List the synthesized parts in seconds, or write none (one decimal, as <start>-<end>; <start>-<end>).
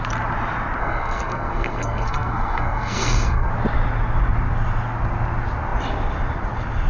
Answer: 0.8-3.5